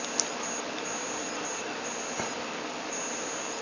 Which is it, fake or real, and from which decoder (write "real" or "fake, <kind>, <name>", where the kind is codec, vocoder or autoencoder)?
real